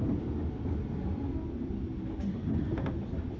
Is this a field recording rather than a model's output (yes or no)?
yes